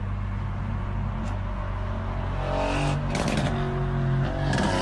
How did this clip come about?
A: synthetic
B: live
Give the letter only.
B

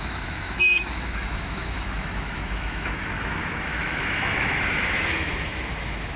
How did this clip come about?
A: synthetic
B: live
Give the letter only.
A